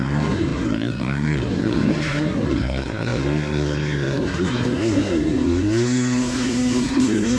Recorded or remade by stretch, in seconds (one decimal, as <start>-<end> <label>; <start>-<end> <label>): 0.0-7.4 remade